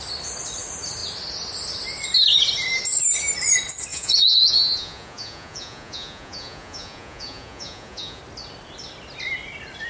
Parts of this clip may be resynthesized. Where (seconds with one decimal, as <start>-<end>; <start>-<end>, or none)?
3.9-8.2